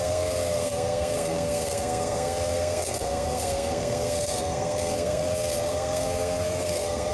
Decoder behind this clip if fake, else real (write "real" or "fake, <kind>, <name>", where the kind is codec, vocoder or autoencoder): fake, codec, SNAC